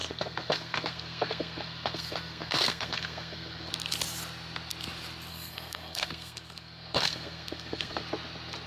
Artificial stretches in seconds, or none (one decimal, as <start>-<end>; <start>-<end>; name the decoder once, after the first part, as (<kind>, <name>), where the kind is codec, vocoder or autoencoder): 0.0-3.7 (codec, SNAC); 5.3-8.0